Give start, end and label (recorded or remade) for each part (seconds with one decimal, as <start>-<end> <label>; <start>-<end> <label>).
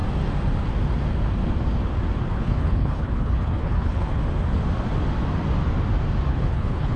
0.0-2.3 recorded; 2.3-4.2 remade; 4.2-6.3 recorded; 6.3-7.0 remade